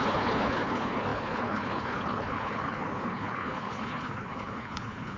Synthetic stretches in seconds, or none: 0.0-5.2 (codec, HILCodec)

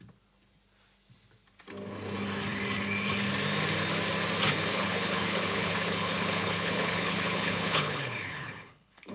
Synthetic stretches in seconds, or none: 4.7-9.1 (codec, HILCodec)

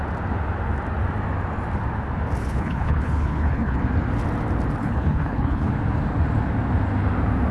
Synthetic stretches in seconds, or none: 2.4-3.8 (codec, HILCodec); 4.8-5.7

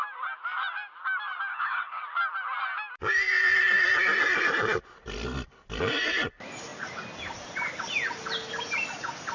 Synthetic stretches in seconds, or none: 1.5-2.0 (codec, HILCodec)

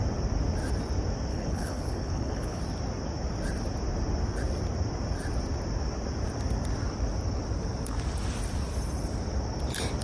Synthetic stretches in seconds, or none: 1.3-2.6 (codec, HILCodec)

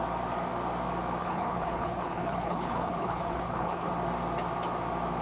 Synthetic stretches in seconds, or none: 1.2-3.9 (codec, HILCodec)

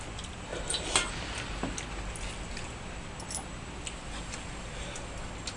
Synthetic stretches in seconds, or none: none

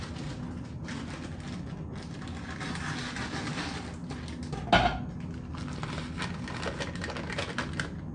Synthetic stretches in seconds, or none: none